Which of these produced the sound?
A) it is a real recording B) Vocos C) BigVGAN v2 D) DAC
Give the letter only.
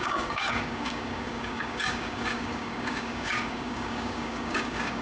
D